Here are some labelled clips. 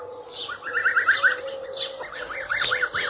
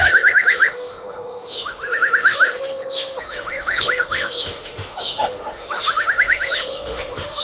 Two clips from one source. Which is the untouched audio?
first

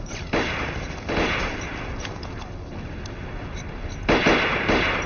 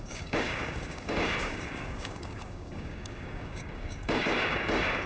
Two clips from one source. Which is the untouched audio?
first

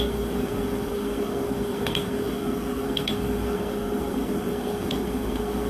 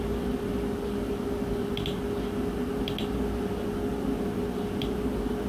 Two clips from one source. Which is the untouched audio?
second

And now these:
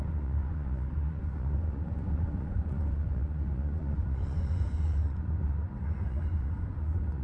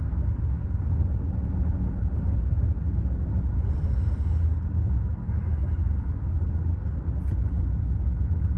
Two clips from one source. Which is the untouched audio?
second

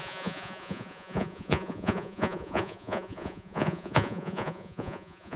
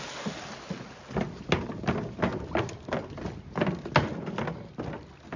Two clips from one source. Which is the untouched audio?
second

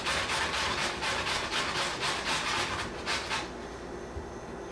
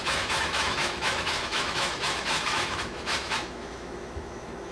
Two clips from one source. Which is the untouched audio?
first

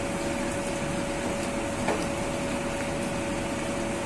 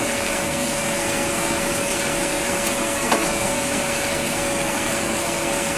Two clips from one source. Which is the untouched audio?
first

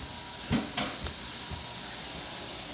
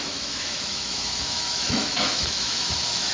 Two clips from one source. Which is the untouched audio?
first